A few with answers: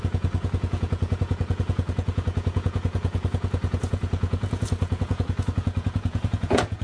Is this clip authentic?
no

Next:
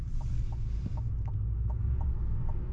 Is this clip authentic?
yes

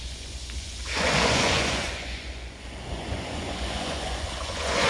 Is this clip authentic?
no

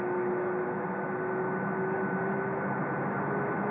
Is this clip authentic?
yes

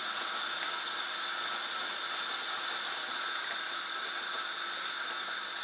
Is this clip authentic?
yes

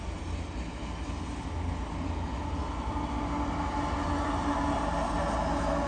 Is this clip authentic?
yes